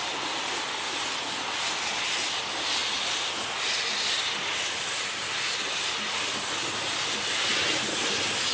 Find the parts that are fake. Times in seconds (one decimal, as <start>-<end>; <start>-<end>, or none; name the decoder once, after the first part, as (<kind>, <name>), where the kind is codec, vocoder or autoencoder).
none